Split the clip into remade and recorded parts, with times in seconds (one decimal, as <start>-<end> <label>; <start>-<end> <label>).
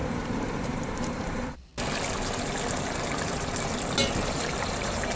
0.0-1.7 remade; 1.7-4.3 recorded; 4.3-5.2 remade